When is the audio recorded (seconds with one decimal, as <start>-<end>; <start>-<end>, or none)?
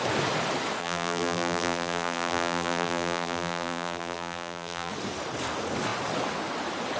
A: 0.0-0.8; 4.9-7.0